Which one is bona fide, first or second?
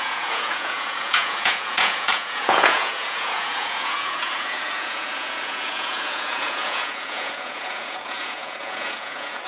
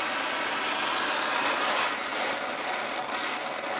second